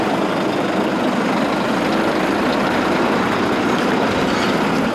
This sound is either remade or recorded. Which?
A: recorded